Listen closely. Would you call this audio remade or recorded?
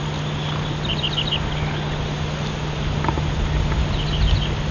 recorded